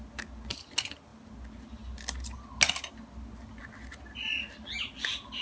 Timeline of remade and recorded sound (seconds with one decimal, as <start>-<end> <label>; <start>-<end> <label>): 0.0-5.4 recorded